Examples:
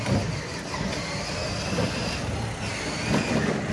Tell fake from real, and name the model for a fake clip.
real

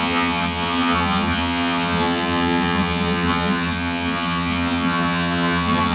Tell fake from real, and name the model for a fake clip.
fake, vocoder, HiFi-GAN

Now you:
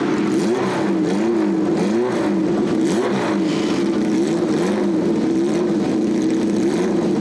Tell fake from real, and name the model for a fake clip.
real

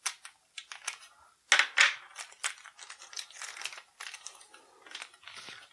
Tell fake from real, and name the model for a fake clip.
real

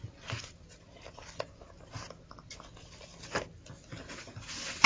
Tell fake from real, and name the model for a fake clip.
real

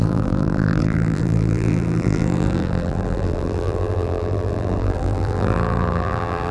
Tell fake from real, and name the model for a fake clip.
fake, vocoder, BigVGAN v2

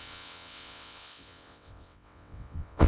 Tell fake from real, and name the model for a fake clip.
fake, vocoder, WaveNeXt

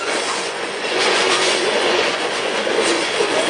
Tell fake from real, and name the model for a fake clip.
fake, vocoder, Vocos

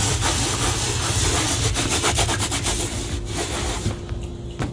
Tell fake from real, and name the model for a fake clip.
real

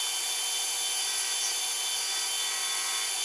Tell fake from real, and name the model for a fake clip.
real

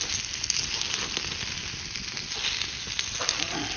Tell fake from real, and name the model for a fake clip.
real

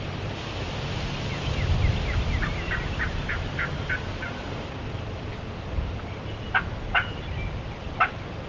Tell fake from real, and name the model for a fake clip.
real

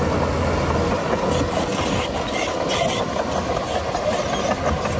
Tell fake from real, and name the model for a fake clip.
real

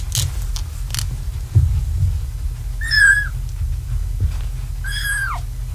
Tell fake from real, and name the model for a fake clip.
real